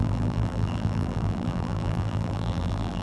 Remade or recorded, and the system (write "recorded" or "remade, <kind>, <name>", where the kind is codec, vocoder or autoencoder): remade, vocoder, BigVGAN v2